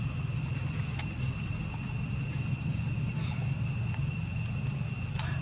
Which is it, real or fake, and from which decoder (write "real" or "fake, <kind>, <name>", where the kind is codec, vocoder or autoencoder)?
real